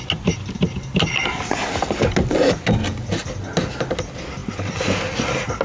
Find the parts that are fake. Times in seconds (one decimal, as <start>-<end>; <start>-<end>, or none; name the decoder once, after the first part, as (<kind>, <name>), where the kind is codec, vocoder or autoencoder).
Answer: none